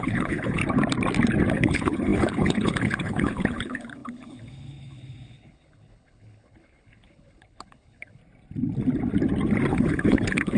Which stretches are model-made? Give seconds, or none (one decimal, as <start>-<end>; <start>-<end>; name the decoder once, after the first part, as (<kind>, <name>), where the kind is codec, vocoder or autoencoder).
0.0-0.6 (codec, HILCodec); 1.5-8.2; 9.7-10.6